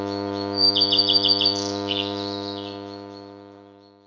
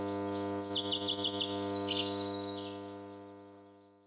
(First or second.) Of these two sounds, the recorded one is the second